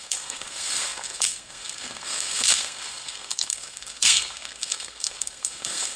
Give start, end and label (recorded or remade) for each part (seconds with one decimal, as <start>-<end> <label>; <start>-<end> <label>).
0.0-6.0 remade

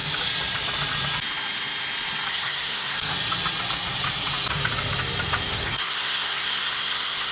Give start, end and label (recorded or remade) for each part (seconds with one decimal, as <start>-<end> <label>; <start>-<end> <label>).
0.0-2.3 recorded; 2.3-3.1 remade; 3.1-5.5 recorded; 5.5-7.3 remade

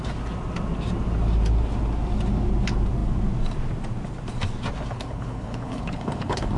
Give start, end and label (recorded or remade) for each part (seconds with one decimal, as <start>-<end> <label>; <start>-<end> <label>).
0.0-4.9 recorded; 4.9-6.6 remade

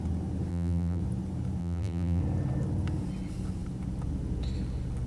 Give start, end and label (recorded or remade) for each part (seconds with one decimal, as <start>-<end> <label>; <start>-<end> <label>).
0.0-0.5 recorded; 0.5-1.0 remade; 1.0-1.6 recorded; 1.6-2.2 remade; 2.2-5.1 recorded

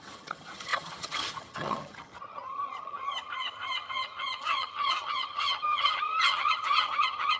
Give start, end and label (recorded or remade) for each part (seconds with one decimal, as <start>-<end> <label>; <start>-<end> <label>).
0.0-7.4 remade

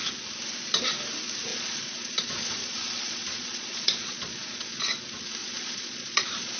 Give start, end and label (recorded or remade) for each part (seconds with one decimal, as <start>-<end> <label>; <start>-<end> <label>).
0.0-1.5 recorded; 1.5-4.8 remade; 4.8-5.4 recorded; 5.4-6.6 remade

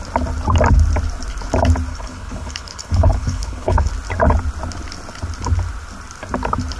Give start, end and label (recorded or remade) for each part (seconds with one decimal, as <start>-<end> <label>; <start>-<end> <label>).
0.0-1.9 recorded; 1.9-3.9 remade; 3.9-6.8 recorded